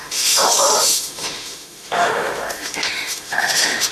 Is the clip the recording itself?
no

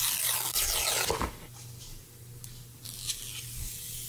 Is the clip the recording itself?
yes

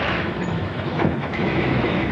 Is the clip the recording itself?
no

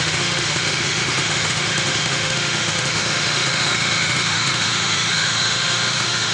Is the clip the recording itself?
no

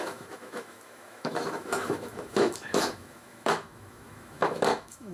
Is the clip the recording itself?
no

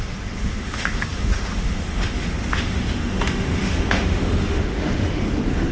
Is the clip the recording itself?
no